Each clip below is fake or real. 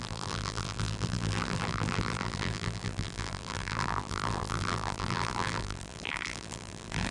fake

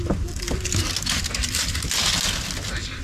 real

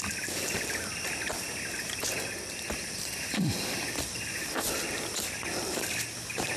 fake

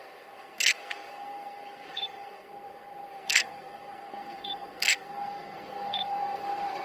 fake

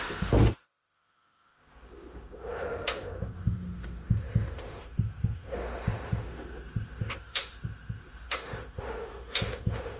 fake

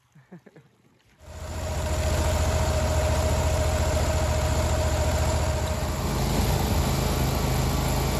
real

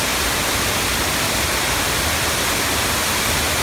real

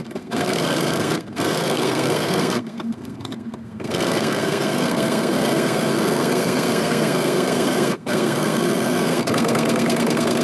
fake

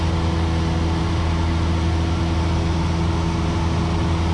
real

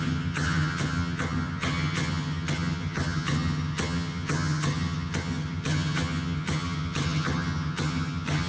fake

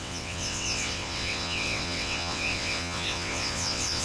fake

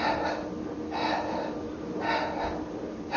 real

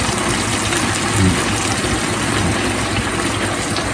real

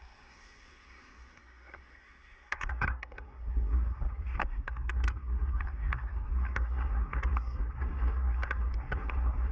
fake